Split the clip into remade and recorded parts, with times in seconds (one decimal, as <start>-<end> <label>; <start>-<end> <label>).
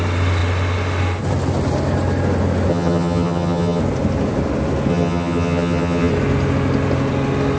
0.0-2.7 recorded; 2.7-3.8 remade; 3.8-4.9 recorded; 4.9-6.1 remade; 6.1-7.6 recorded